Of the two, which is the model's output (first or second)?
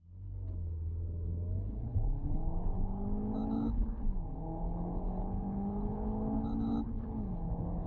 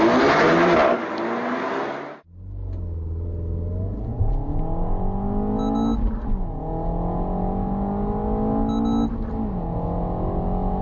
first